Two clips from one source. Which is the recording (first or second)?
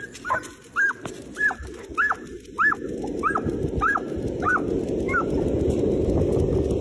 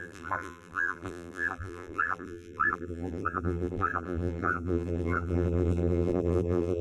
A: first